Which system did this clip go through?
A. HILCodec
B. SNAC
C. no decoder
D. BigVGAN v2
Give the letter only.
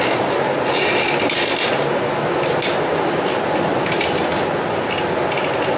C